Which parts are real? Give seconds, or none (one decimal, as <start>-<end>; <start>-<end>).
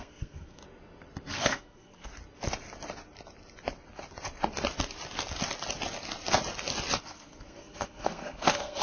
0.6-1.3; 2.1-7.0